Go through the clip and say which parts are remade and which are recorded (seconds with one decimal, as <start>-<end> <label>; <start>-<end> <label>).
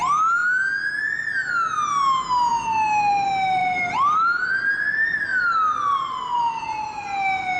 0.0-7.6 recorded